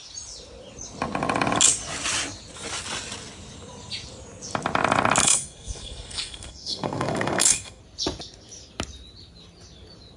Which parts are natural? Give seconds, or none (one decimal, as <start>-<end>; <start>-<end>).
0.0-5.2; 7.8-10.2